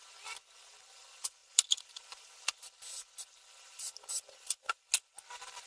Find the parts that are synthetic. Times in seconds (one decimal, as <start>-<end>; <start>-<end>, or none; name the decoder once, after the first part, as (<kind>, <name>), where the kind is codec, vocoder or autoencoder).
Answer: 1.4-4.7 (vocoder, BigVGAN v2)